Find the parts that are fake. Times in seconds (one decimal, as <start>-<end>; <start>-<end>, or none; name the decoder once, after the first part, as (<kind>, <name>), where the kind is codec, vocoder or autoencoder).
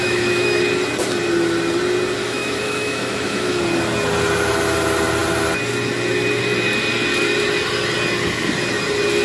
0.0-0.6 (autoencoder, DAC-VAE); 2.2-3.6